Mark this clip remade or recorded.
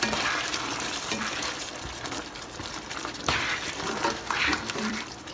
remade